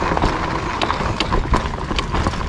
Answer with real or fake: real